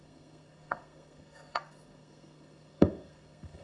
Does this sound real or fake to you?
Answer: fake